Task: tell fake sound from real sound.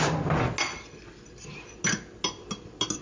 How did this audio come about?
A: real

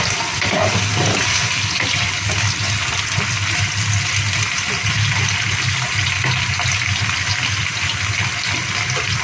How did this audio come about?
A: real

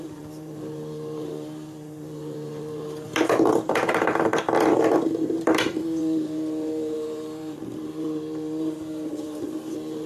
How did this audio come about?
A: fake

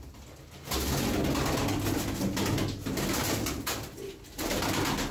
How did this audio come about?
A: real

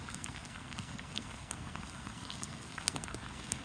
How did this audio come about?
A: fake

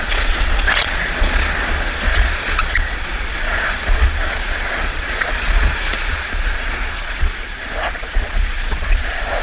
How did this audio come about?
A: fake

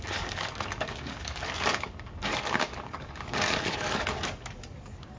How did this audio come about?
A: fake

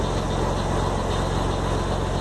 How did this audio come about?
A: real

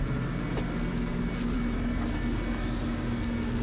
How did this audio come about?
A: real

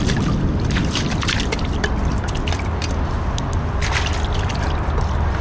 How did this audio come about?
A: real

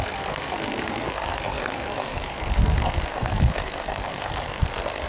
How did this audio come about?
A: fake